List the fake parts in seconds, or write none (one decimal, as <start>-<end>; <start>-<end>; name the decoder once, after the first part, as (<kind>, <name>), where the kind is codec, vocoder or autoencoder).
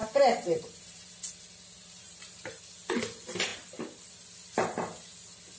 0.0-1.1 (vocoder, BigVGAN v2); 1.8-2.5